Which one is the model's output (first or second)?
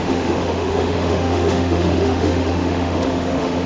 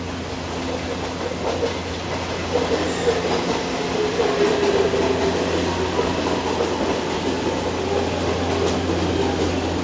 first